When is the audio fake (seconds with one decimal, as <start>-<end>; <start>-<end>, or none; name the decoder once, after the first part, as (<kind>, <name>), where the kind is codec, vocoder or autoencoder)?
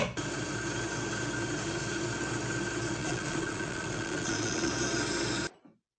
3.0-4.7 (vocoder, Vocos)